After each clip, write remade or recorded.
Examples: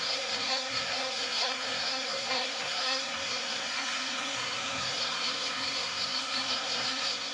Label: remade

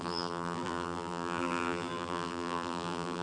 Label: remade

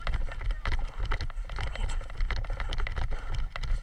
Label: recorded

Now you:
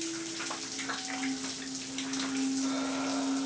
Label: recorded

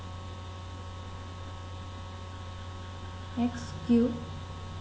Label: recorded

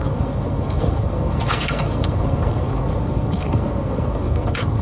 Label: remade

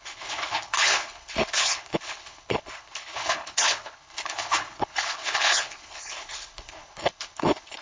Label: remade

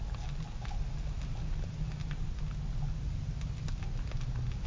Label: recorded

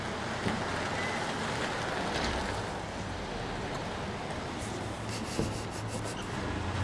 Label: recorded